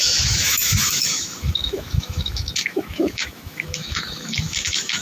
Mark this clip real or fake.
fake